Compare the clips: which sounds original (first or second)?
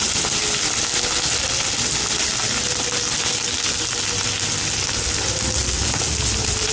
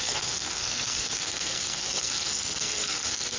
first